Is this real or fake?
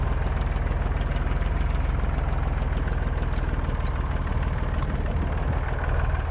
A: real